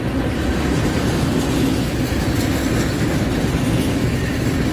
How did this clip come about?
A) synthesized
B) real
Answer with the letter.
B